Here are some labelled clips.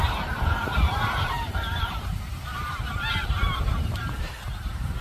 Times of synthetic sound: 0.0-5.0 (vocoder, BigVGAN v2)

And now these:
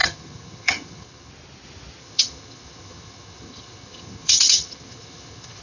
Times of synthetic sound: 0.0-1.3 (vocoder, HiFi-GAN); 2.0-5.6

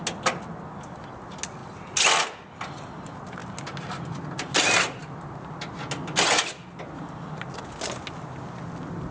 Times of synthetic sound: none

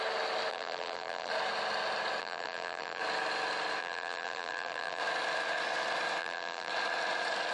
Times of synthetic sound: 0.5-1.3 (vocoder, BigVGAN v2); 2.2-3.0; 3.8-5.0; 6.2-6.7